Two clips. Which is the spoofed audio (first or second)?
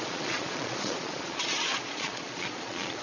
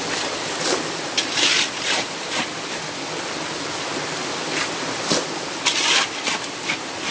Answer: first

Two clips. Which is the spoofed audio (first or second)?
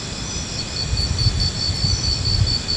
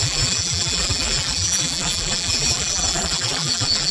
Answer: second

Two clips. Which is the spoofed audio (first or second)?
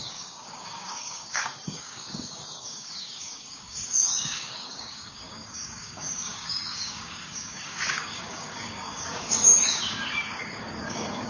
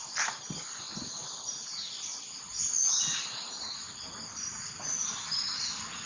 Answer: first